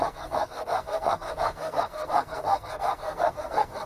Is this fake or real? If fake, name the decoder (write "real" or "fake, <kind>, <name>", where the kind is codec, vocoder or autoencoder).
fake, codec, SNAC